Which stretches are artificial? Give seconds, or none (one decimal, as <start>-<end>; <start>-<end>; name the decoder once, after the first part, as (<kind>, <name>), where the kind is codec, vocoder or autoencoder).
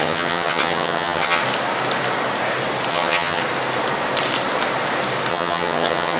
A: 0.0-1.4 (vocoder, HiFi-GAN); 2.9-3.4; 5.3-6.2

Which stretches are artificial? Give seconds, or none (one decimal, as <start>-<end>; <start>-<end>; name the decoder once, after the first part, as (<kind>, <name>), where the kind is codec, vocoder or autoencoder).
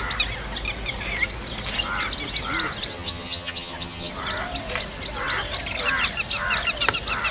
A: 2.9-4.1 (vocoder, HiFi-GAN)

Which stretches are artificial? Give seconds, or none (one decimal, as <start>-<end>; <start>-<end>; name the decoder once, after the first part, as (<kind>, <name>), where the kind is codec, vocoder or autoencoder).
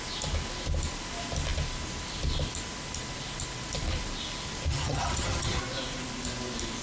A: 4.7-5.6 (vocoder, HiFi-GAN)